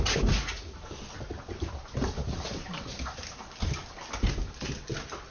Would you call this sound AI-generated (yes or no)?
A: no